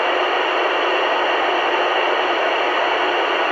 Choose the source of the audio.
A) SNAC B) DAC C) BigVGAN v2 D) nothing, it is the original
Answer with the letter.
D